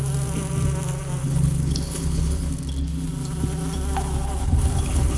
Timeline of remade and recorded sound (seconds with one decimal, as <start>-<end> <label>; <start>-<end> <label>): 0.0-1.2 recorded; 1.2-2.5 remade; 2.5-4.4 recorded; 4.4-5.2 remade